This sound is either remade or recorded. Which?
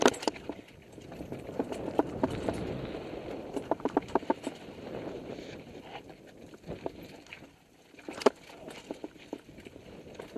remade